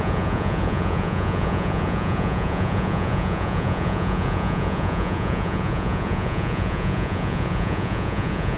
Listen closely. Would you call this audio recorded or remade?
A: remade